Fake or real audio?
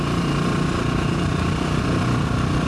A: real